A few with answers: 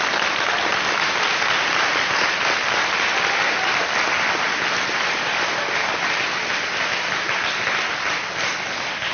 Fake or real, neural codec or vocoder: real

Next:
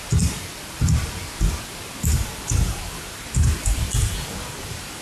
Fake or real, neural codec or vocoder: fake, vocoder, BigVGAN v2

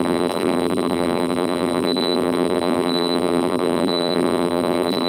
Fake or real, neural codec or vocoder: fake, vocoder, BigVGAN v2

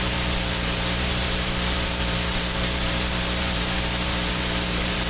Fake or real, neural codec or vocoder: fake, vocoder, BigVGAN v2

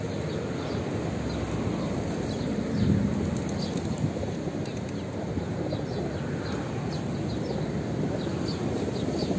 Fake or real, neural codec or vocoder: real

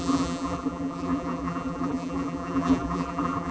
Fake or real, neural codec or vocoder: fake, vocoder, BigVGAN v2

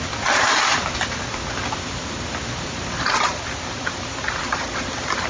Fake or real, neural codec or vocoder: fake, vocoder, BigVGAN v2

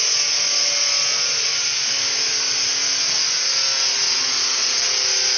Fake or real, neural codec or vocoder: real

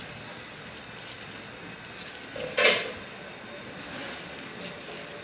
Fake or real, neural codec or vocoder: real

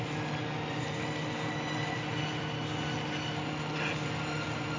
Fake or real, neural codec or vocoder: real